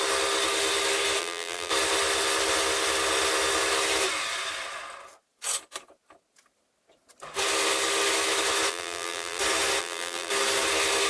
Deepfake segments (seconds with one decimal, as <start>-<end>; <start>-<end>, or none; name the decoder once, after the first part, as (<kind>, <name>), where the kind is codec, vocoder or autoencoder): 1.2-1.7 (vocoder, BigVGAN v2); 8.7-9.4; 9.8-10.3